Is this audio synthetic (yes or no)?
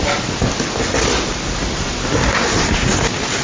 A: no